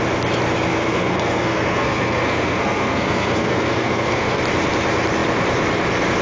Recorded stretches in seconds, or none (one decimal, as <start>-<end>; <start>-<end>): 0.0-0.7; 4.4-6.2